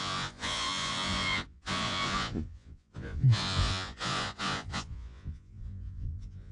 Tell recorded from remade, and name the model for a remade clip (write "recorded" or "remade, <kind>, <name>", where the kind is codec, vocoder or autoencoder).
remade, vocoder, Vocos